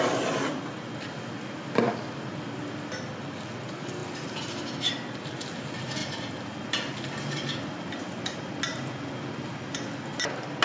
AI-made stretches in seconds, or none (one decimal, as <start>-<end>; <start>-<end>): none